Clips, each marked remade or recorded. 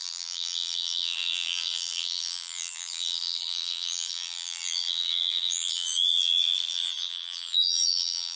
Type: remade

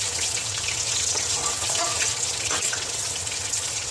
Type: remade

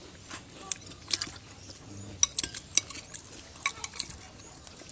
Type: recorded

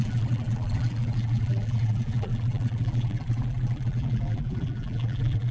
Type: remade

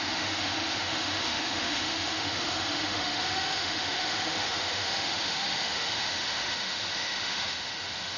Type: remade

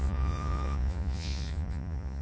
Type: remade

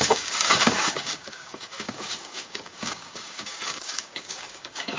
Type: remade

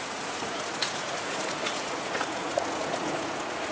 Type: remade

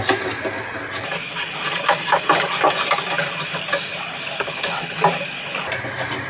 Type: recorded